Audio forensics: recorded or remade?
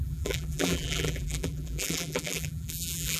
remade